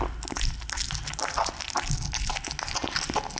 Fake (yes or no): no